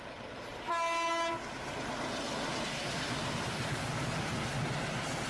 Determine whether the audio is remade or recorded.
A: recorded